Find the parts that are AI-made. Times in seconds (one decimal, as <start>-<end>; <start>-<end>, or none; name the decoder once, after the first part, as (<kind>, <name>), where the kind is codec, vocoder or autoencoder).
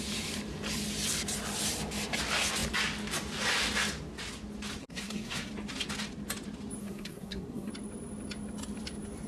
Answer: 4.8-5.5 (codec, SNAC); 6.8-7.7